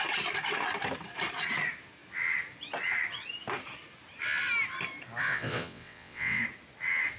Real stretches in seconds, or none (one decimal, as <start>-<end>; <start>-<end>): 0.0-5.2; 6.4-7.2